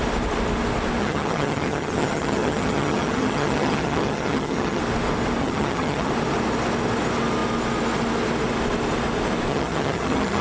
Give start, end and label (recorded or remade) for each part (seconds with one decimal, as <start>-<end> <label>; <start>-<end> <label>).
0.0-1.0 recorded; 1.0-4.8 remade; 4.8-5.4 recorded; 5.4-6.1 remade; 6.1-9.5 recorded; 9.5-10.4 remade